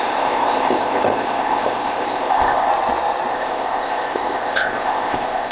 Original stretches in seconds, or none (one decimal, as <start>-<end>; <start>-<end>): 2.7-3.3